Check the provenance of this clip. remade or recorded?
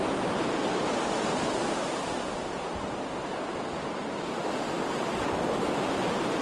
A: recorded